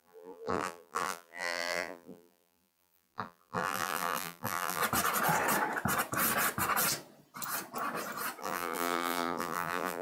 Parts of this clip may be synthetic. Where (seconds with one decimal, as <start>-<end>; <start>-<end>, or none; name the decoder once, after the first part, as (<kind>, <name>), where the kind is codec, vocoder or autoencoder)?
0.0-4.8 (vocoder, BigVGAN v2); 8.4-10.0